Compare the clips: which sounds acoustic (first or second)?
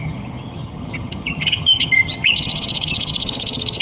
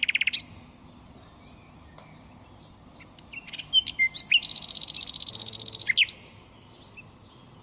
second